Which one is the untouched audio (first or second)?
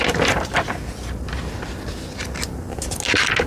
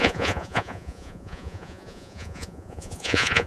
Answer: first